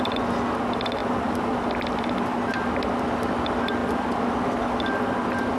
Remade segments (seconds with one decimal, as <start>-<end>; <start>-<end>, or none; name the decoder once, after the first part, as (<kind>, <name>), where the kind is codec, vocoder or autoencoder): none